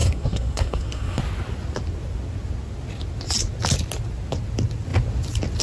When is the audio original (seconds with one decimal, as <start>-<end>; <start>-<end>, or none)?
1.2-5.6